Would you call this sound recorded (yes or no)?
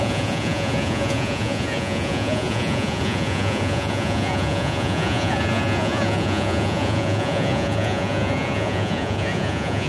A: no